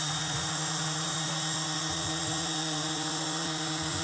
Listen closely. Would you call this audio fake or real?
fake